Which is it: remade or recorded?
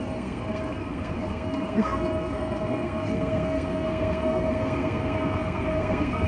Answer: remade